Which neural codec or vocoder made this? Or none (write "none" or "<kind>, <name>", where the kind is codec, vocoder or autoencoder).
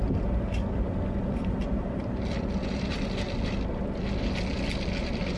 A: none